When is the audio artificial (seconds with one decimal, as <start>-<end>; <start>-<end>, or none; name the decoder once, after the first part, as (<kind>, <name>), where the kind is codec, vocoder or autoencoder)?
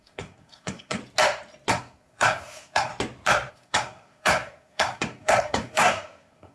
0.0-1.0 (codec, SNAC); 1.7-2.9; 3.5-6.5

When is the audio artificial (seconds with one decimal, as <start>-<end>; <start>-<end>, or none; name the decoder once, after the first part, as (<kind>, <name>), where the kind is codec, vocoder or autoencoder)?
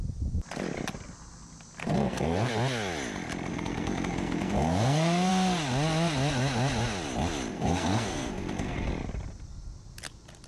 1.8-2.5 (codec, SNAC); 3.5-5.3; 7.5-8.9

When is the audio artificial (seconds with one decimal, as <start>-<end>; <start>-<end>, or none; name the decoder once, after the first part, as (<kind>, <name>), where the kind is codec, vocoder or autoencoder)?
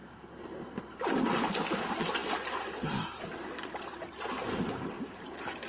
none